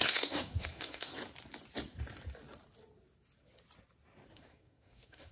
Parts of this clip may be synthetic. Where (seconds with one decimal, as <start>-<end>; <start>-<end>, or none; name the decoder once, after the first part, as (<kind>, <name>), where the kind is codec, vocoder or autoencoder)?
0.0-1.1 (codec, SNAC); 4.3-5.3